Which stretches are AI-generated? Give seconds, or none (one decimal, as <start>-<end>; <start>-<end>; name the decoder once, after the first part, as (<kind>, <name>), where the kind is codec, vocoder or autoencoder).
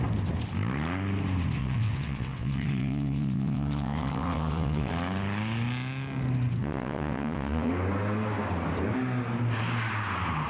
1.6-4.9 (vocoder, WaveNeXt); 6.6-7.7